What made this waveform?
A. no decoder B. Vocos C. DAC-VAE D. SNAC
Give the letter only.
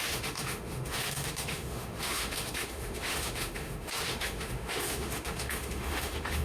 C